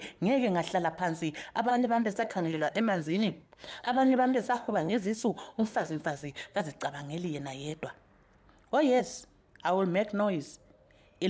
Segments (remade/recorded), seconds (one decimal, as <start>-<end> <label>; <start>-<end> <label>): 0.0-1.7 recorded; 1.7-6.6 remade; 6.6-11.3 recorded